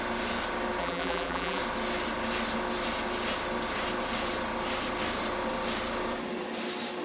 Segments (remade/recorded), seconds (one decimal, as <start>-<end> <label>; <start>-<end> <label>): 0.0-0.8 recorded; 0.8-1.6 remade; 1.6-7.0 recorded